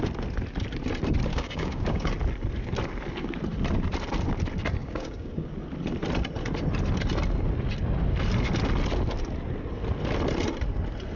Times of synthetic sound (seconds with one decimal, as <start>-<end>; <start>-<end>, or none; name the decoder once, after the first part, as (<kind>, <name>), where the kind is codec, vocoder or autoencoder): 1.3-2.1 (codec, DAC); 4.8-5.5